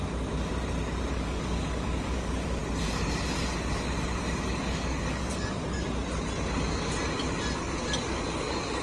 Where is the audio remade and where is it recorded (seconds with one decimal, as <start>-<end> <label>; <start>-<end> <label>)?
0.0-1.1 recorded; 1.1-2.6 remade; 2.6-4.2 recorded; 4.2-5.6 remade; 5.6-8.3 recorded; 8.3-8.8 remade